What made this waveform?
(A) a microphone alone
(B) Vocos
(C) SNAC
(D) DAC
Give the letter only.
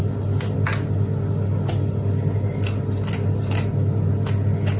A